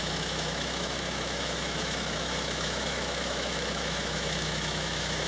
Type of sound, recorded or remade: remade